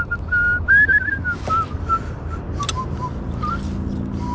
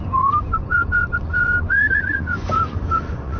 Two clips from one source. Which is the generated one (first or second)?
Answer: second